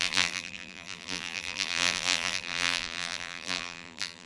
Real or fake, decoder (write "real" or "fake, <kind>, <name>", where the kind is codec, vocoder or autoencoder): fake, vocoder, BigVGAN v2